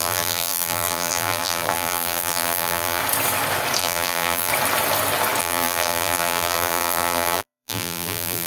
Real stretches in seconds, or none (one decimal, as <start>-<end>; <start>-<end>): 3.0-3.8; 4.5-5.4